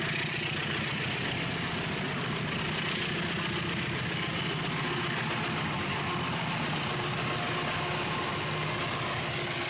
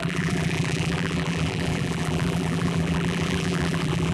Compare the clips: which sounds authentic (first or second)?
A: first